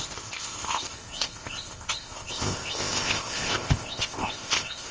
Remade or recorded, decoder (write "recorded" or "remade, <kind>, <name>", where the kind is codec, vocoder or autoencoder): remade, codec, ZipCodec